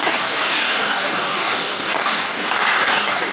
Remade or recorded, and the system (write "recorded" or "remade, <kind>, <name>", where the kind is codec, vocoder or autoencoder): remade, codec, DAC